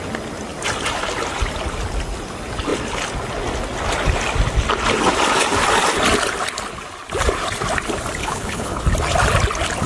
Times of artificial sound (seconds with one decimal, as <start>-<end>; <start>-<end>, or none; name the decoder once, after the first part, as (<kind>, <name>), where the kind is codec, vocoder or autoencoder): 8.2-8.8 (codec, HILCodec)